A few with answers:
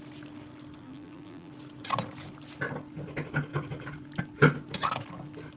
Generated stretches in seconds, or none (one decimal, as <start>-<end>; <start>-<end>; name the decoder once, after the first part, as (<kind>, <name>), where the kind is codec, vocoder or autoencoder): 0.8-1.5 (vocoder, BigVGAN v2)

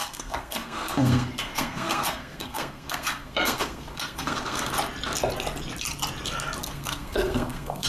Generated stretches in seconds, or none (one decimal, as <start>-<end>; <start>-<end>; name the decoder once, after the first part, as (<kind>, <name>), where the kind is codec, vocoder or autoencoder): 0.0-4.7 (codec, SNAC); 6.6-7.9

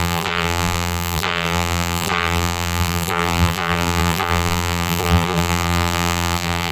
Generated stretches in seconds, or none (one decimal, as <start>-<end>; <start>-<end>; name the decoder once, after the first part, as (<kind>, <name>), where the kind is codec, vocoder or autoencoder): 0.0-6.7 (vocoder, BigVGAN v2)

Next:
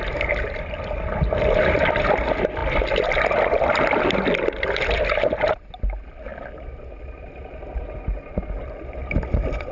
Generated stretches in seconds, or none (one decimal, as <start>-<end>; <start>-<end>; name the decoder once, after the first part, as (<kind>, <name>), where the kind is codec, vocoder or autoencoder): none

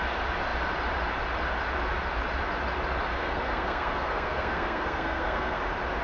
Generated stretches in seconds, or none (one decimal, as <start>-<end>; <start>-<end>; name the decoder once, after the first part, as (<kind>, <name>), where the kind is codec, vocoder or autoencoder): 3.1-5.6 (codec, SNAC)

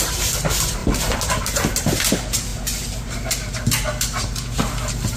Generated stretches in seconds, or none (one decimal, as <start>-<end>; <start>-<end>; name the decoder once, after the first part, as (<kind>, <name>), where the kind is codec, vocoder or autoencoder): 0.0-2.5 (vocoder, BigVGAN v2)